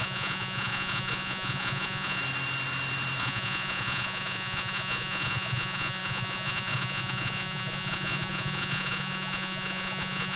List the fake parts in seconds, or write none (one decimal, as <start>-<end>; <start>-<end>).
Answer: 0.0-2.2; 3.2-10.3